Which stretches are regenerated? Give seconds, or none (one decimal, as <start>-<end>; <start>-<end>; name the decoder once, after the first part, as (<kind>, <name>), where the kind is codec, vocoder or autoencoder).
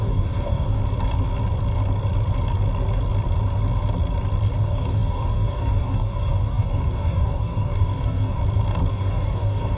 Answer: 0.0-0.8 (codec, DAC); 4.6-8.4; 8.9-9.8